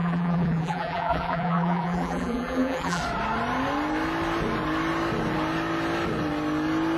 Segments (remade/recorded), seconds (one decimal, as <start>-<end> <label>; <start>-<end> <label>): 0.0-3.0 remade; 3.0-7.0 recorded